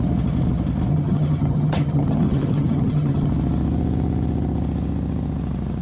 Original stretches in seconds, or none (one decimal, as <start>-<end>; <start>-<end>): 0.0-0.9; 3.3-5.8